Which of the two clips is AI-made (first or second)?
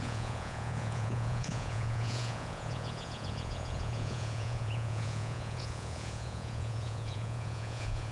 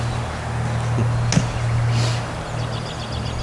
first